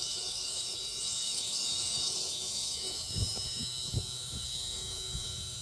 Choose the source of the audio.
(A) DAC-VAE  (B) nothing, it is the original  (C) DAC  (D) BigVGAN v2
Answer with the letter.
A